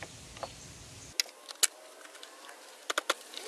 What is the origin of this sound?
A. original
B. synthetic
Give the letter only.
A